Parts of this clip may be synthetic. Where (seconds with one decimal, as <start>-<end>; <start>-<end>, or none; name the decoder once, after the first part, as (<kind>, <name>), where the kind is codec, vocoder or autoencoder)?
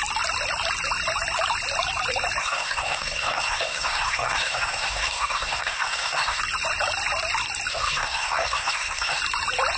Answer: 2.4-6.4 (codec, SNAC); 7.7-9.2